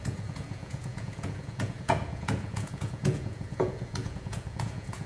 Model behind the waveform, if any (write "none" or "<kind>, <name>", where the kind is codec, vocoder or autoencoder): vocoder, Vocos